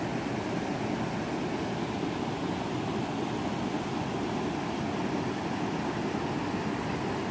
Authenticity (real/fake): real